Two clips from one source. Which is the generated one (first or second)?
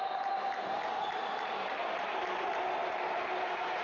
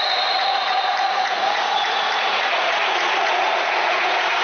second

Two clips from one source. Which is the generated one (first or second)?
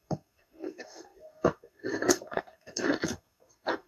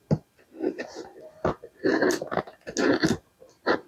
first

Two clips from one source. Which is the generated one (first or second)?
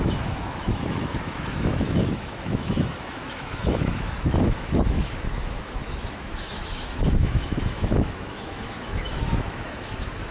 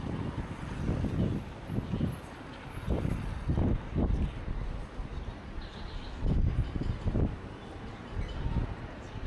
first